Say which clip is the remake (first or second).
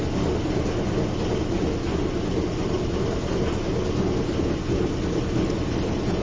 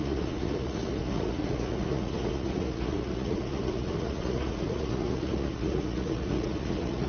second